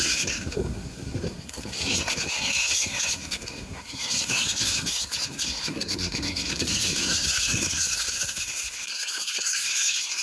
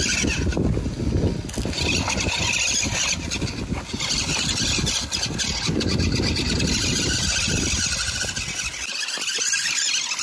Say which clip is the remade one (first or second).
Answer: first